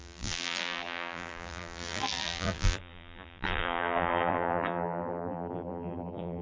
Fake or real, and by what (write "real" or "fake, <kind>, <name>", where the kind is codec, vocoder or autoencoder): fake, vocoder, BigVGAN v2